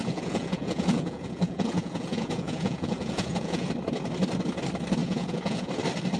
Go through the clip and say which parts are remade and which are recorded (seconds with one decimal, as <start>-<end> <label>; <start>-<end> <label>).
0.0-3.7 remade; 3.7-5.0 recorded; 5.0-5.7 remade; 5.7-6.2 recorded

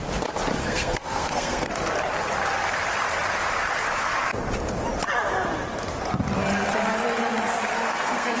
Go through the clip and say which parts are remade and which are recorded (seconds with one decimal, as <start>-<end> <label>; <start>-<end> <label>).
0.0-0.6 recorded; 0.6-1.7 remade; 1.7-7.7 recorded; 7.7-8.4 remade

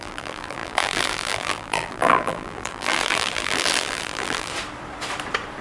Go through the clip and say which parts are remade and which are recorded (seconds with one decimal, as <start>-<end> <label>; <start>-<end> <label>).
0.0-4.5 remade; 4.5-5.6 recorded

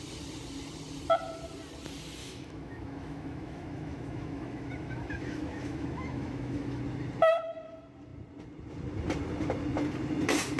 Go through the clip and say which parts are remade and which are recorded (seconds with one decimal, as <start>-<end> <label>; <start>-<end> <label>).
0.0-2.2 recorded; 2.2-6.8 remade; 6.8-10.6 recorded

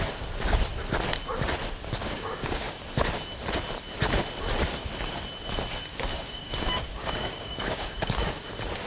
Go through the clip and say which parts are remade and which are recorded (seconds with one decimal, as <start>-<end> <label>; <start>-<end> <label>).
0.0-2.0 recorded; 2.0-2.8 remade; 2.8-5.9 recorded; 5.9-8.5 remade; 8.5-8.9 recorded

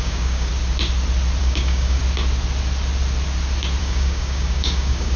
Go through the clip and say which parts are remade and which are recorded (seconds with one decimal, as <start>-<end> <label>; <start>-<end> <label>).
0.0-0.5 remade; 0.5-1.4 recorded; 1.4-2.0 remade; 2.0-3.8 recorded; 3.8-5.2 remade

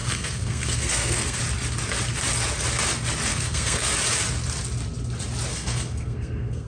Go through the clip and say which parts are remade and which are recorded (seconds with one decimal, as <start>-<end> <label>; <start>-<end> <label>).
0.0-1.4 remade; 1.4-3.3 recorded; 3.3-3.9 remade; 3.9-5.5 recorded; 5.5-6.7 remade